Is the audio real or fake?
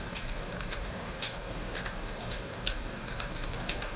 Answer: fake